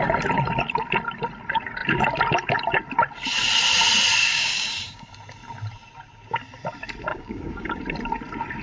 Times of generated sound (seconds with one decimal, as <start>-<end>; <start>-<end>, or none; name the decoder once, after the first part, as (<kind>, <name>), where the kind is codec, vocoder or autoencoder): 4.2-5.1 (codec, DAC); 7.1-7.8